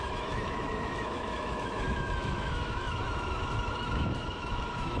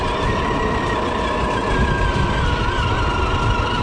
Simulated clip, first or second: first